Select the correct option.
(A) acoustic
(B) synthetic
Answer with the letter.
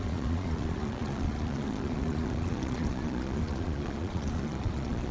B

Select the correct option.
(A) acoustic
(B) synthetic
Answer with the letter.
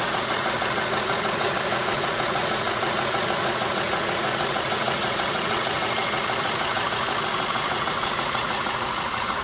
B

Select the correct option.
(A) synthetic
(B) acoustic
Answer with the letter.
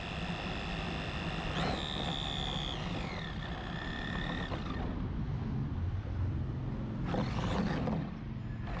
B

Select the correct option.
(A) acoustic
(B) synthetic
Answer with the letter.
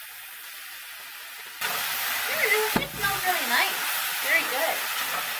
A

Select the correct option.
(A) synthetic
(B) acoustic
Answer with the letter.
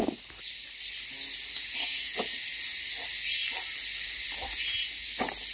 B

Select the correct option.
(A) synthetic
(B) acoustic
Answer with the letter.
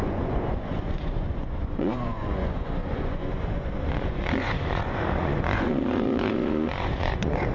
A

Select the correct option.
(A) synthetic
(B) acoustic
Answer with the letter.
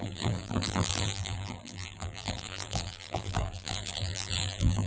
A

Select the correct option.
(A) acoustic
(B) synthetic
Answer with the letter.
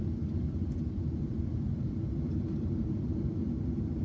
A